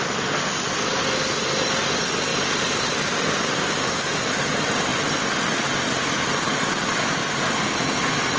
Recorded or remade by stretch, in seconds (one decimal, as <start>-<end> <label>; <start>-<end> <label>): 0.0-2.3 recorded; 2.3-4.2 remade; 4.2-4.9 recorded; 4.9-6.2 remade; 6.2-8.4 recorded